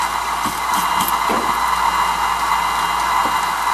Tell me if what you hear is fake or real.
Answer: real